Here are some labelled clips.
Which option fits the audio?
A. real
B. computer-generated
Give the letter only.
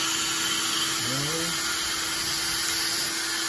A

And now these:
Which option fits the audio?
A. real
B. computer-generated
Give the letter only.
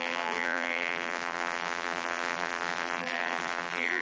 B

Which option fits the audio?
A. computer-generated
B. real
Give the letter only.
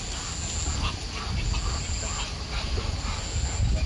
B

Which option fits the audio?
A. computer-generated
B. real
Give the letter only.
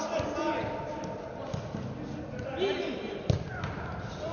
B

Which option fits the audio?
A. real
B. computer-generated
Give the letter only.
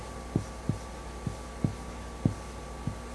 A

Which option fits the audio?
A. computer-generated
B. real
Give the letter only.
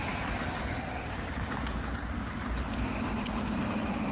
A